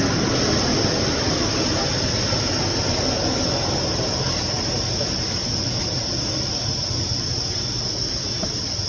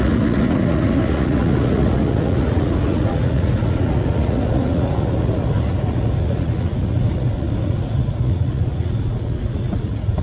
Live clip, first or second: first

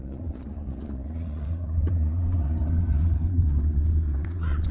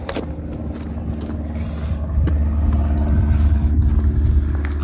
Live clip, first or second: second